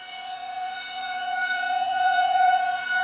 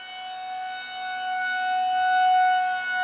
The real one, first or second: second